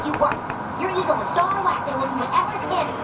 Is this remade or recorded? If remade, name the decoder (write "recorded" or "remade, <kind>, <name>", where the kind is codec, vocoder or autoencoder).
recorded